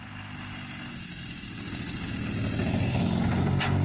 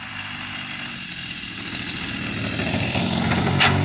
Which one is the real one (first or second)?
first